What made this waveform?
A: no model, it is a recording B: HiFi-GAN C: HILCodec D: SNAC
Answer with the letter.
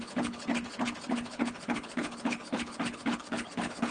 C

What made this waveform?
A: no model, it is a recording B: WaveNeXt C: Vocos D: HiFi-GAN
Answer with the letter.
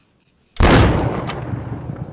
A